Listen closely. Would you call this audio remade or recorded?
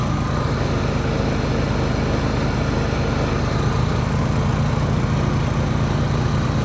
recorded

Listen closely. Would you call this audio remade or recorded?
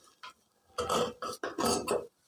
recorded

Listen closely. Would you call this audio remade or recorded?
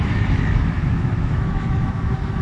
remade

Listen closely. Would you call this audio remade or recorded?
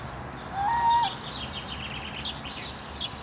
recorded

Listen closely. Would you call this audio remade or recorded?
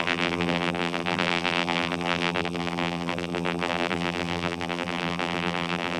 remade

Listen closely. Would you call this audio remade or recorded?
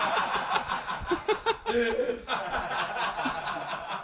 recorded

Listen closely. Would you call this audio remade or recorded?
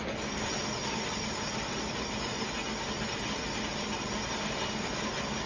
recorded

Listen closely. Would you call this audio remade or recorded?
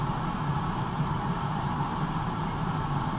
remade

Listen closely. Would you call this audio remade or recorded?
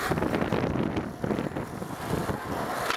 recorded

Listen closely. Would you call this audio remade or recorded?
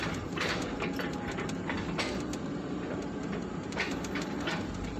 remade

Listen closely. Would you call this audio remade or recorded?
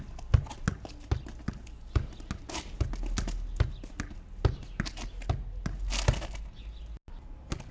recorded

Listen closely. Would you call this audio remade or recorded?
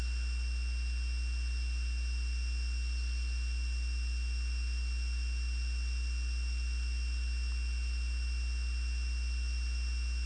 recorded